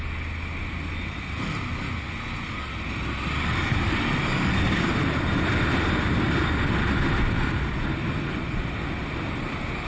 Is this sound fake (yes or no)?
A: no